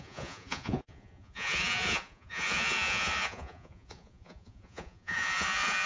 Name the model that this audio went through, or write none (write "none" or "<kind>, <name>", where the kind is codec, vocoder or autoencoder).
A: vocoder, Vocos